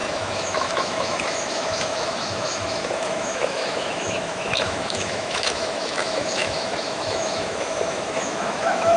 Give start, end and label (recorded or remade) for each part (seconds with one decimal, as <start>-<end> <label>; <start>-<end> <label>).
0.0-9.0 remade